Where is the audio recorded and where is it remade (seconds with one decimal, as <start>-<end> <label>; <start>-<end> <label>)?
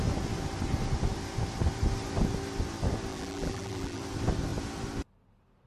0.0-3.1 recorded; 3.1-4.0 remade; 4.0-5.7 recorded